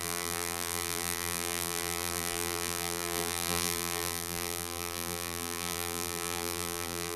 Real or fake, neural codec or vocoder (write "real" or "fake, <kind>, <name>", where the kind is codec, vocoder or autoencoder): fake, vocoder, BigVGAN v2